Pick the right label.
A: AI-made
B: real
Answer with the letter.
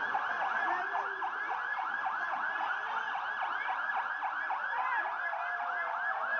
B